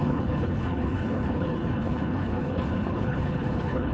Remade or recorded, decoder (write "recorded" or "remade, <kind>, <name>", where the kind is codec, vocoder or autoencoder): remade, codec, HILCodec